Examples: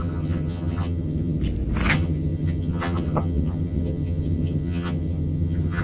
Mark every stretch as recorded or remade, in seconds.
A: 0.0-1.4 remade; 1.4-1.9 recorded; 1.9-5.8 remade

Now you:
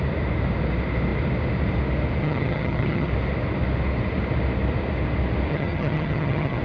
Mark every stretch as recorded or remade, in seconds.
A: 0.0-2.2 recorded; 2.2-3.1 remade; 3.1-5.5 recorded; 5.5-6.6 remade

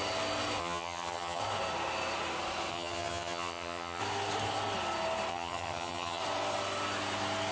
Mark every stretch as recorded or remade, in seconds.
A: 0.0-0.6 recorded; 0.6-1.4 remade; 1.4-2.7 recorded; 2.7-4.0 remade; 4.0-5.3 recorded; 5.3-6.2 remade; 6.2-7.5 recorded

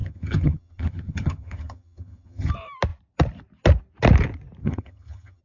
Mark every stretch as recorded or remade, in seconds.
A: 0.0-2.5 remade; 2.5-4.6 recorded; 4.6-5.4 remade